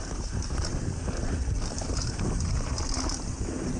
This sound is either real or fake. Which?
real